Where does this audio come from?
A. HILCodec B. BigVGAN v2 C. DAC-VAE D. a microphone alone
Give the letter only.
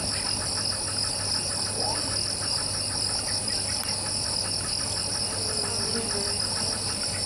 D